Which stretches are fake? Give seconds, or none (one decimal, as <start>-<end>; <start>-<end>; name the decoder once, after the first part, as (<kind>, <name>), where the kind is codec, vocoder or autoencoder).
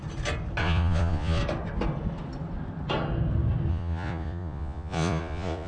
0.6-1.4 (vocoder, Vocos); 3.7-5.7